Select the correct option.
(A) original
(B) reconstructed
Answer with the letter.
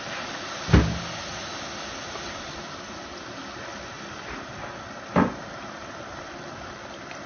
A